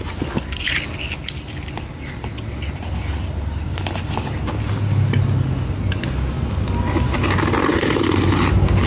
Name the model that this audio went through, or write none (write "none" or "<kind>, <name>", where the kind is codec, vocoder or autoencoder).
none